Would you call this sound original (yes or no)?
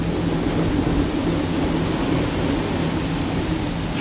yes